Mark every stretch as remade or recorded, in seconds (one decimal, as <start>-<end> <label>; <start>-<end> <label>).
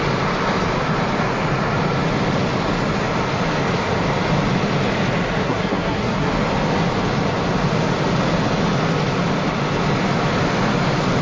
0.0-5.4 recorded; 5.4-6.3 remade; 6.3-11.2 recorded